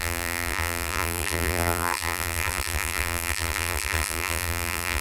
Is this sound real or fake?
fake